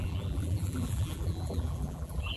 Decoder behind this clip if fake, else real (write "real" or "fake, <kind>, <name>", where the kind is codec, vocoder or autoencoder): fake, vocoder, BigVGAN v2